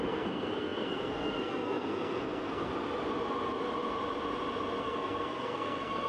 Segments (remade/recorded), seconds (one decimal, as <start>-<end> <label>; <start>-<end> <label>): 0.0-2.7 remade; 2.7-4.8 recorded; 4.8-6.1 remade